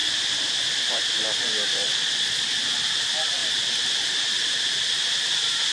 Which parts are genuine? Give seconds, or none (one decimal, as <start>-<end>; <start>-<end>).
0.0-1.8; 2.5-5.7